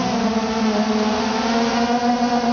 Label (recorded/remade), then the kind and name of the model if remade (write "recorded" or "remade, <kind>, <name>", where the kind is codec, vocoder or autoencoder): recorded